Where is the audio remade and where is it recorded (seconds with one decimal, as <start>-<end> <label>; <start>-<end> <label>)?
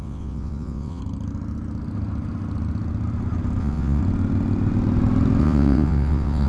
0.0-1.0 remade; 1.0-3.6 recorded; 3.6-4.0 remade; 4.0-5.4 recorded; 5.4-6.5 remade